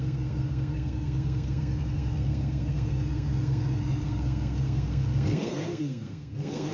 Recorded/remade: remade